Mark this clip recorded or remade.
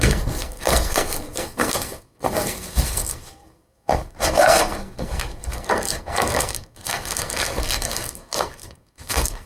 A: remade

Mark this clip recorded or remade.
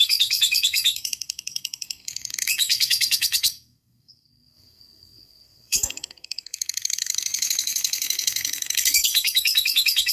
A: remade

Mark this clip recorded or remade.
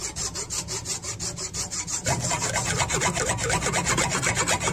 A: recorded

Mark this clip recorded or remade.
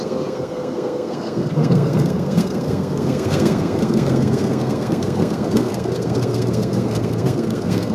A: remade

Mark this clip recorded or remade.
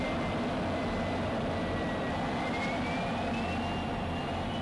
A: recorded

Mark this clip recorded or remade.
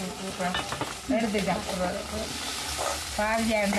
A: recorded